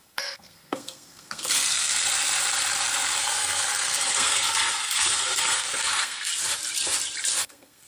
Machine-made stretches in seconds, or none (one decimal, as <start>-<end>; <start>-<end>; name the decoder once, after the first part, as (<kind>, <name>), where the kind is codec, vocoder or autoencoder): 0.0-1.9 (codec, SNAC); 3.2-6.3; 7.4-7.9